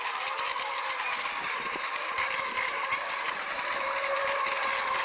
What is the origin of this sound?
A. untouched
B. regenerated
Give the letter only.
A